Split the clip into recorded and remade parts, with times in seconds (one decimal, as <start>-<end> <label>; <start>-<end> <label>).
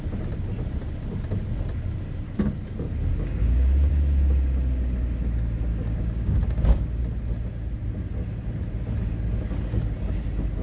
0.0-3.1 recorded; 3.1-3.9 remade; 3.9-5.7 recorded; 5.7-7.0 remade; 7.0-10.6 recorded